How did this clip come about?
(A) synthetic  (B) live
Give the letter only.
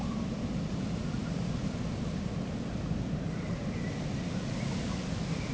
B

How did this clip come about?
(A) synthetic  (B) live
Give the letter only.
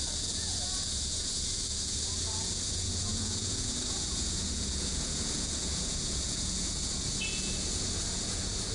A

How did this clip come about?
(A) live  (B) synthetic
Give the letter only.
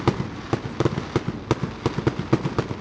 A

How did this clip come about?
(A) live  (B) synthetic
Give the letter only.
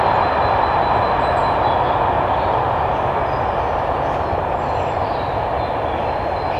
A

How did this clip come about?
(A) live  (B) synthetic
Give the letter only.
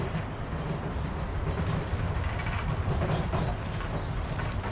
A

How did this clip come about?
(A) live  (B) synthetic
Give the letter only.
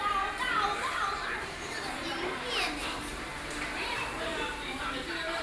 B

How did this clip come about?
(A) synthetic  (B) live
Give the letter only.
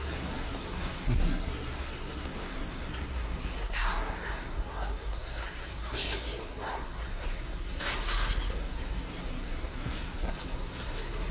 A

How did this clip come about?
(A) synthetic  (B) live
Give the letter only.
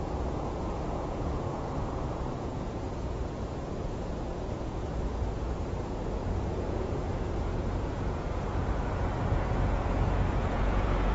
A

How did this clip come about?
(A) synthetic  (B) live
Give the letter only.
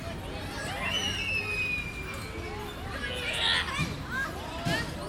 B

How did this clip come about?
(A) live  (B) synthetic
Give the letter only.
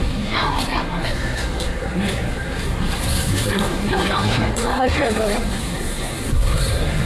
B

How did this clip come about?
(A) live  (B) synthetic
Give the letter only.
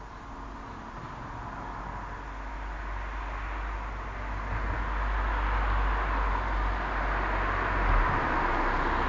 A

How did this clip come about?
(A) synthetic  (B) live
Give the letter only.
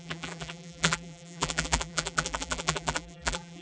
A